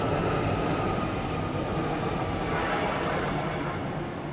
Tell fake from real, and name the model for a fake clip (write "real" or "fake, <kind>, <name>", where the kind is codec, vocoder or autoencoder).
real